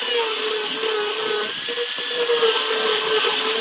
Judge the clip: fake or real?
real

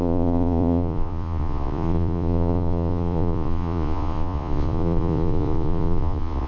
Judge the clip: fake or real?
fake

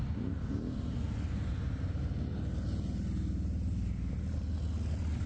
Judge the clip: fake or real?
real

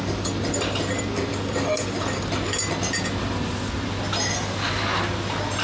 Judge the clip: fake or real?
real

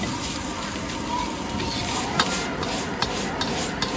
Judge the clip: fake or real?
real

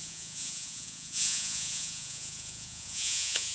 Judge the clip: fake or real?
fake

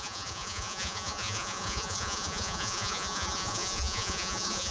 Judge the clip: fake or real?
fake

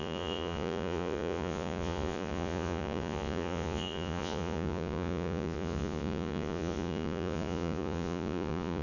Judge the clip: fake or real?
fake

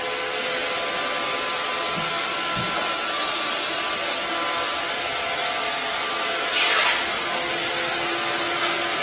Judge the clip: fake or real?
real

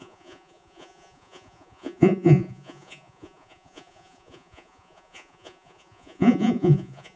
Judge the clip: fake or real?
fake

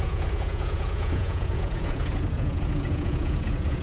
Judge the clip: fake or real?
fake